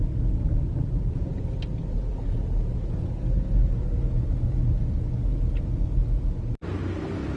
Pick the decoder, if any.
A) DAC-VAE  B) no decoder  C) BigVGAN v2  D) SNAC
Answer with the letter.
B